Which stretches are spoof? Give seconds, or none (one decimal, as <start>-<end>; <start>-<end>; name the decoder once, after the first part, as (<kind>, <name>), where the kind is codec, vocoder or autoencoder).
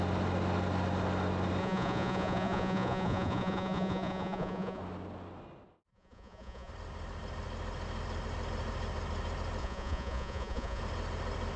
1.6-4.8 (vocoder, Vocos); 5.9-6.7; 9.6-10.8